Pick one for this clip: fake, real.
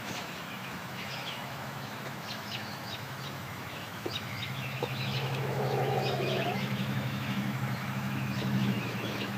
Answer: fake